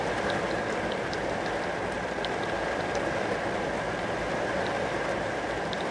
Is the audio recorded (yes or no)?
yes